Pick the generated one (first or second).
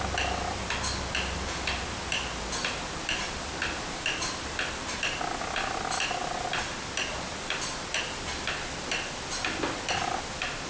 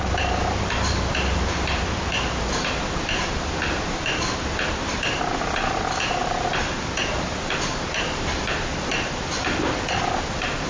second